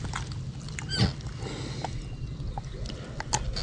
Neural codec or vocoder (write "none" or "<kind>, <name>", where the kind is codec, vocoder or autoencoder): none